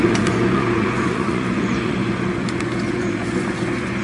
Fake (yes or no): yes